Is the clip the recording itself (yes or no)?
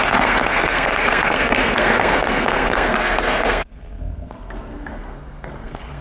no